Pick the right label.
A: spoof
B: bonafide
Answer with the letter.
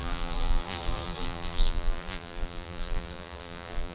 A